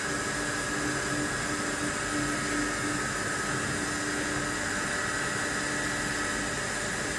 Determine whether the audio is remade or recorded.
recorded